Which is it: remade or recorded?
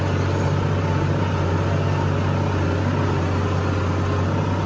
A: recorded